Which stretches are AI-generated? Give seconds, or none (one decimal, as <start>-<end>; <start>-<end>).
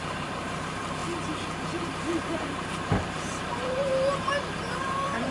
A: 0.0-1.0; 3.0-3.8; 4.4-5.3